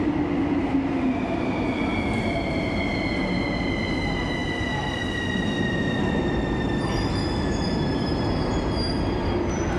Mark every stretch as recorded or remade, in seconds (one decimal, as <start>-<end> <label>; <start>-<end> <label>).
0.0-9.8 recorded